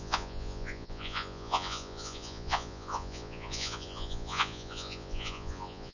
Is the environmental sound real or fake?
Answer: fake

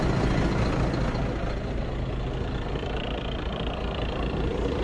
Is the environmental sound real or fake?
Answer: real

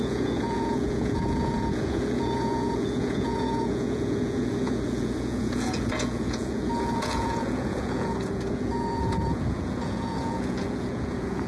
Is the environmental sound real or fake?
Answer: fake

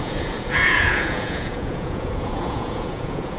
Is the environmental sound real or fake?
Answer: fake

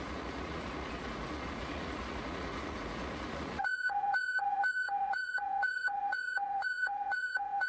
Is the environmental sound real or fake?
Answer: fake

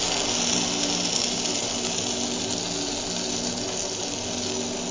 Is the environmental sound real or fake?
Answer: real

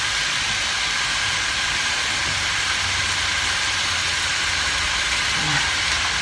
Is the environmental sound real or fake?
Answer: real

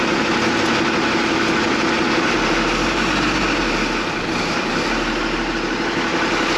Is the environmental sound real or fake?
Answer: real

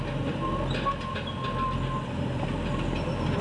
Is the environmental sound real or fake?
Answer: real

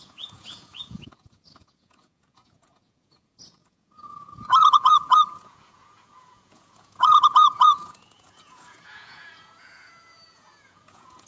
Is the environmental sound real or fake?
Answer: fake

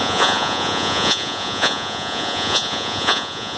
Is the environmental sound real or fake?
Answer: fake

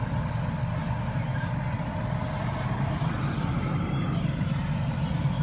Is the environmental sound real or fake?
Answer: real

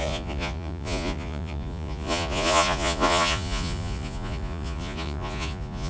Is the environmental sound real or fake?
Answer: fake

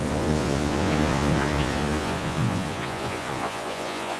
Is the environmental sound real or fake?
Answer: fake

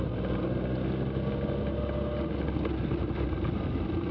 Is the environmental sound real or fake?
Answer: real